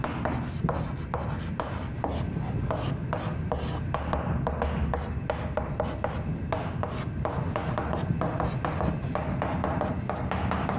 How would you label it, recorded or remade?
recorded